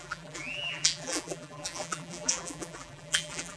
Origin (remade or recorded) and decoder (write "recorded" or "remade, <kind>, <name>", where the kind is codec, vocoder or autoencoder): remade, vocoder, BigVGAN v2